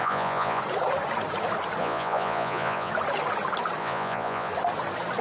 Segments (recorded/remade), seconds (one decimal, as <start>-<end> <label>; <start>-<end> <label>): 0.0-0.6 remade; 0.6-1.8 recorded; 1.8-2.9 remade; 2.9-3.8 recorded; 3.8-4.5 remade; 4.5-5.2 recorded